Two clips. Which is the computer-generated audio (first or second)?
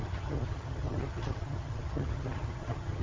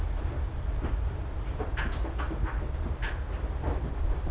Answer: first